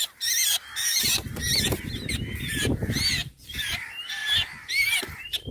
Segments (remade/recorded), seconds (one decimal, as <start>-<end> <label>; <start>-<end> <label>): 0.0-4.2 remade; 4.2-5.0 recorded; 5.0-5.5 remade